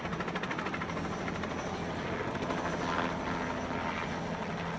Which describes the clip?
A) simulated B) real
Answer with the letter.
B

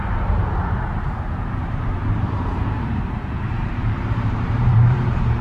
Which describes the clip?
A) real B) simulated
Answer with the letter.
B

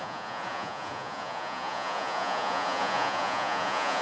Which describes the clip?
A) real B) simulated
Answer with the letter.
B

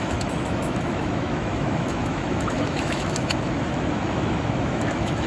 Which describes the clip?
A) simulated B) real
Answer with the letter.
A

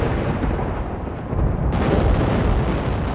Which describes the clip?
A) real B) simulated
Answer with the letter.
A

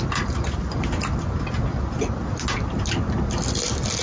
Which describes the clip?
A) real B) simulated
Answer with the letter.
A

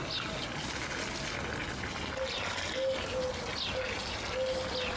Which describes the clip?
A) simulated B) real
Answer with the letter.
B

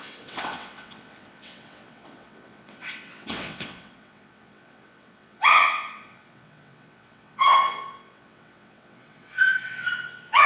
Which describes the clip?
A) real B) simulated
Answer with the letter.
B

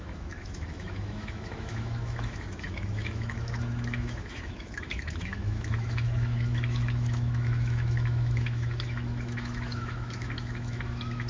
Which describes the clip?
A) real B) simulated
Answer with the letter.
B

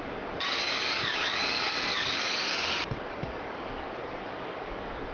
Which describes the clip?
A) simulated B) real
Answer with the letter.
A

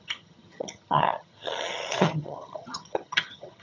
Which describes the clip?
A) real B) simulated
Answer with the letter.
B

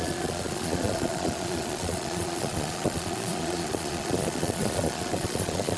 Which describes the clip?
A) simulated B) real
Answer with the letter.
A